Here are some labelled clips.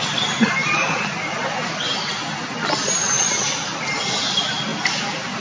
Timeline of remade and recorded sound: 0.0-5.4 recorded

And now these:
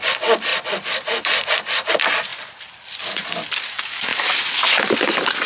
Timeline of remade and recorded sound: 0.0-5.5 recorded

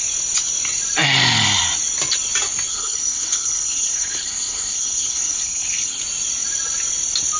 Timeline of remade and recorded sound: 0.0-2.7 recorded; 2.7-6.0 remade; 6.0-7.4 recorded

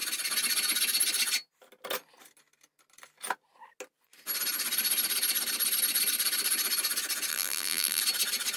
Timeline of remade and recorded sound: 0.0-7.3 recorded; 7.3-8.0 remade; 8.0-8.6 recorded

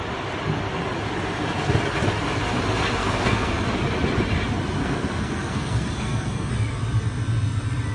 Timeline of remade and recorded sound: 0.0-3.0 recorded; 3.0-3.5 remade; 3.5-4.8 recorded; 4.8-6.5 remade; 6.5-7.9 recorded